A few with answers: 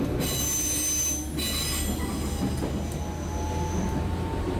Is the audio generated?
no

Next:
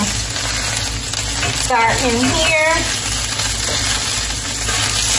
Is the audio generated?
no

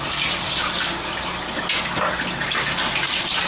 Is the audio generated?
no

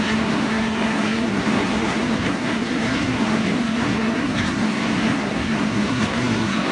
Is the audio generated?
yes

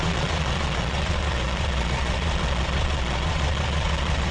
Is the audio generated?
yes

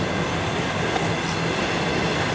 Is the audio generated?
no